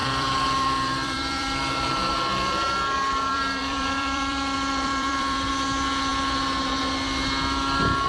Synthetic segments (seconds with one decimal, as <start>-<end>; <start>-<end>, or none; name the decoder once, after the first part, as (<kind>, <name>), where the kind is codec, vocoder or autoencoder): 0.0-1.9 (vocoder, BigVGAN v2); 2.3-5.5